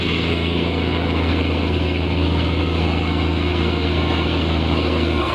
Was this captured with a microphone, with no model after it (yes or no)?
no